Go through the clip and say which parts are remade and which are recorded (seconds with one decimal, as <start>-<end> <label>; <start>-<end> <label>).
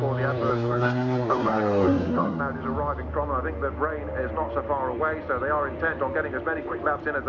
0.0-0.5 recorded; 0.5-2.4 remade; 2.4-7.3 recorded